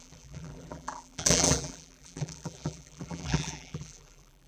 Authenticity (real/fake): fake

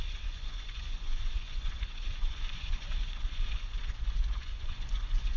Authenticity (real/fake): fake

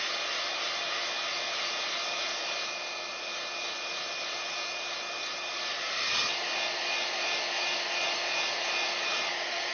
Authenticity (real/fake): real